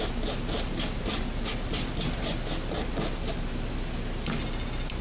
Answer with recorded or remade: recorded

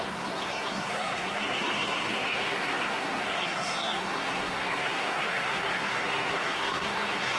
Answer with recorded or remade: remade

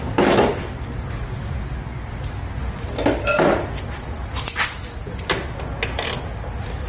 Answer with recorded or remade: recorded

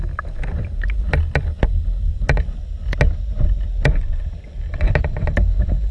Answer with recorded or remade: recorded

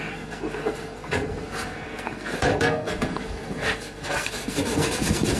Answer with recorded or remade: remade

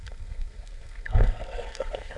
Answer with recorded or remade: remade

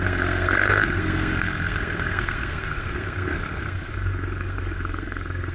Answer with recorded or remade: remade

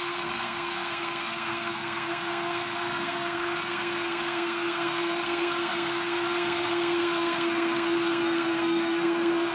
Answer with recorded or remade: remade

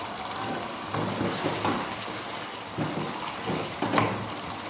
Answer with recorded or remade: recorded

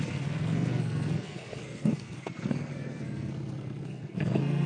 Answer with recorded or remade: remade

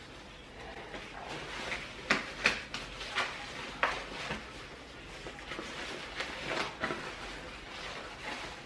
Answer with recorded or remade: recorded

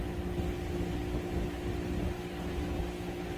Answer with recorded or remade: recorded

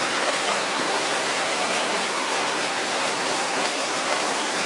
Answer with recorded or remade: remade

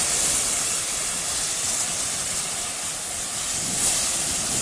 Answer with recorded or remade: recorded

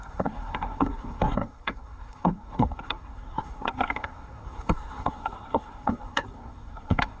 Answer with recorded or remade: remade